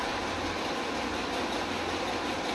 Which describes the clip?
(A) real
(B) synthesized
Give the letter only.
A